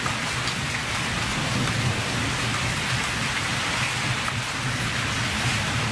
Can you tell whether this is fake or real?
real